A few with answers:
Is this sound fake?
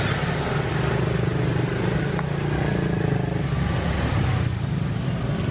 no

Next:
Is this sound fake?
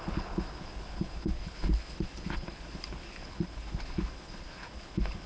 yes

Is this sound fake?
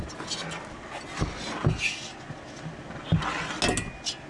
no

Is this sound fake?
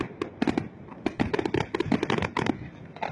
no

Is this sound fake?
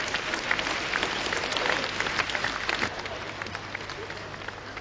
no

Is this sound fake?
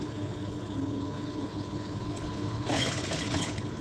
yes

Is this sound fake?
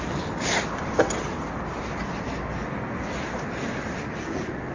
no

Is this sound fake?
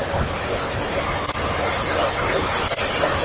no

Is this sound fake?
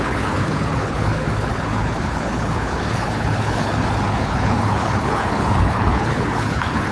yes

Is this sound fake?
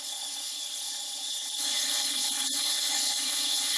yes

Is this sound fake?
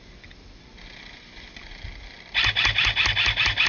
no